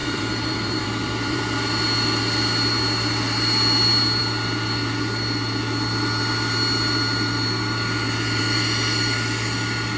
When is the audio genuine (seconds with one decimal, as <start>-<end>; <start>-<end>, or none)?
1.4-10.0